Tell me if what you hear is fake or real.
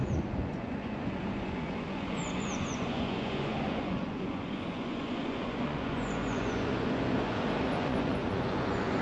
fake